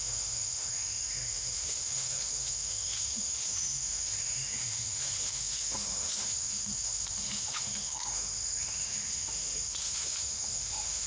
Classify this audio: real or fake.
fake